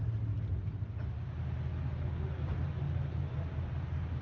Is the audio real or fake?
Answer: real